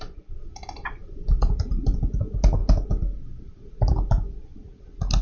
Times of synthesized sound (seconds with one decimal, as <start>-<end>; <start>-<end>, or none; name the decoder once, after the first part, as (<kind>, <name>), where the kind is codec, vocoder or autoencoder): 0.8-2.2 (vocoder, BigVGAN v2)